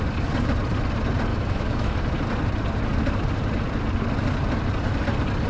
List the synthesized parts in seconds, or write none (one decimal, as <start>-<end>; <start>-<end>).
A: 1.3-1.9